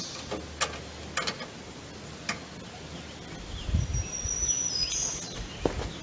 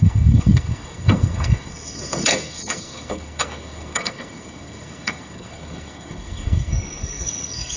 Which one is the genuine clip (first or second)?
first